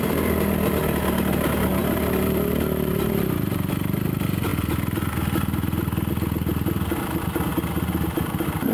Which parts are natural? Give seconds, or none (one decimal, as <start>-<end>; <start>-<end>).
0.0-1.8; 3.1-8.7

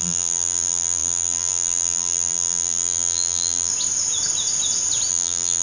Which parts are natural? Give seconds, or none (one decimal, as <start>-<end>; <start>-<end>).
3.7-5.1

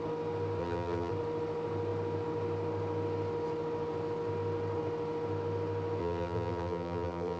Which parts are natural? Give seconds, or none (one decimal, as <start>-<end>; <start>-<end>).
0.0-0.6; 1.1-6.0